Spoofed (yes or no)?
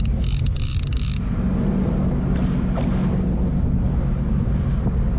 no